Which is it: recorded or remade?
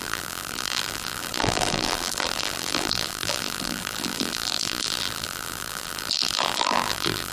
remade